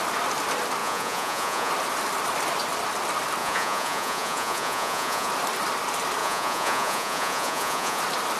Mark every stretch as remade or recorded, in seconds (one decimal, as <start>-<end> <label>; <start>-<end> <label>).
0.0-0.8 recorded; 0.8-1.7 remade; 1.7-3.4 recorded; 3.4-5.3 remade; 5.3-6.2 recorded; 6.2-8.0 remade; 8.0-8.4 recorded